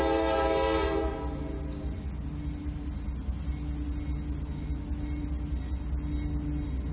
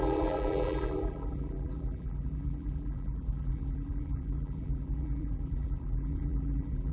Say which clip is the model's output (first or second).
second